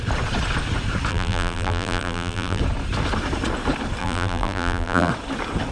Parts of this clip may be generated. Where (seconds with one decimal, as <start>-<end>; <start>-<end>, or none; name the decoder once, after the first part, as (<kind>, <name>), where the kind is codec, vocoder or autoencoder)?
1.1-2.6 (vocoder, BigVGAN v2); 4.0-5.1